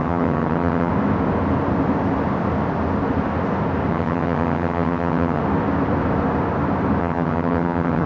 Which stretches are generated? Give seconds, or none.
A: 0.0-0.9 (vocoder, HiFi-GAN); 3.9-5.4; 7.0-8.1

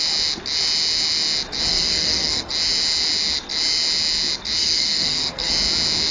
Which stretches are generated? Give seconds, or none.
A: 1.7-2.5 (codec, SNAC); 4.6-5.5

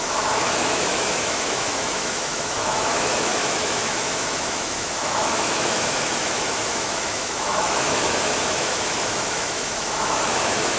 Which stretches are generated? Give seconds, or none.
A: 0.0-10.8 (autoencoder, DAC-VAE)

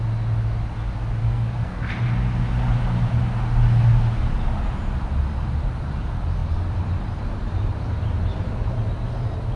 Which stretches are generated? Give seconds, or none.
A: 1.2-1.9 (codec, SNAC)

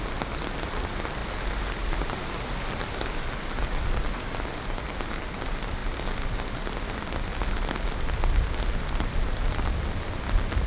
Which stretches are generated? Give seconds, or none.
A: none

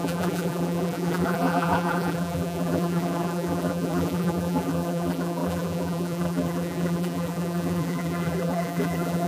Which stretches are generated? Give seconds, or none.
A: 0.0-9.3 (vocoder, BigVGAN v2)